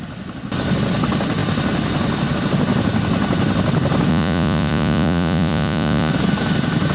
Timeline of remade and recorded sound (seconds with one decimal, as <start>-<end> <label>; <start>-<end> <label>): 0.0-4.1 recorded; 4.1-6.1 remade; 6.1-6.9 recorded

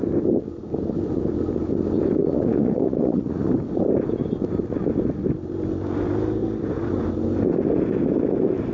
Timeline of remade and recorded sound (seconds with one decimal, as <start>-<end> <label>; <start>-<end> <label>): 0.0-2.2 recorded; 2.2-3.5 remade; 3.5-8.7 recorded